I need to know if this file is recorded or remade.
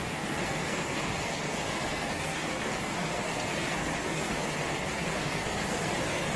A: remade